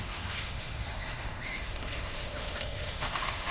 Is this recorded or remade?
remade